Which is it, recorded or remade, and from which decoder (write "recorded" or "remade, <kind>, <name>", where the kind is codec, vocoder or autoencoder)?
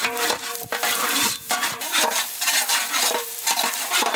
remade, vocoder, BigVGAN v2